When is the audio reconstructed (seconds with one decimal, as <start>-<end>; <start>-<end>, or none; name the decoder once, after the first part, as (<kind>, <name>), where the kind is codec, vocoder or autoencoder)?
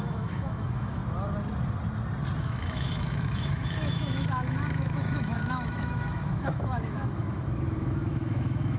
0.0-1.0 (autoencoder, DAC-VAE); 2.4-8.8